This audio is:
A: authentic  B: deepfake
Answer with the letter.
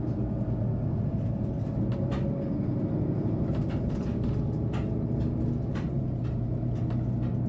A